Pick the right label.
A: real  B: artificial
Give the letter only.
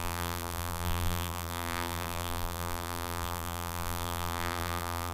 B